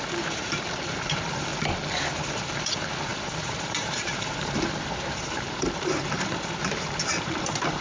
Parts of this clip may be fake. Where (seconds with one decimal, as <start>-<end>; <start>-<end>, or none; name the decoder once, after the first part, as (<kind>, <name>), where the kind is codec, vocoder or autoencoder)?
0.0-1.5 (vocoder, BigVGAN v2); 2.1-7.8